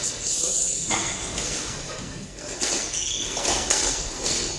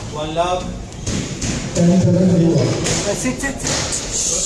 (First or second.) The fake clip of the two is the first